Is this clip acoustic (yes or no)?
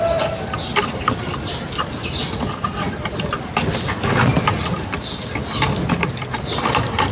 yes